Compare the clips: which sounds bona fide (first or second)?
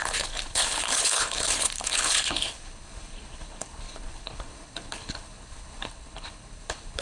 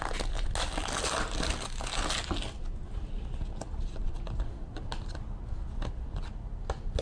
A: second